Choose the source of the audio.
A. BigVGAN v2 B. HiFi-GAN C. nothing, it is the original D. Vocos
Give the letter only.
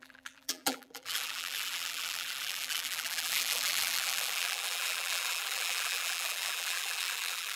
A